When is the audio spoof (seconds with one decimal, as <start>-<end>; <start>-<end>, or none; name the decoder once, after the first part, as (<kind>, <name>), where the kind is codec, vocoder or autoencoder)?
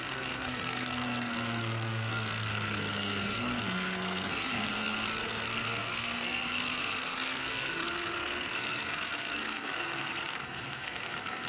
0.0-11.5 (codec, SNAC)